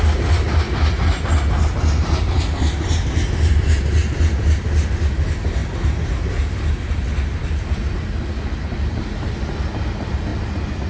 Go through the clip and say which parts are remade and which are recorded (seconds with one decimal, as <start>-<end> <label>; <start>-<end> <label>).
0.0-10.9 recorded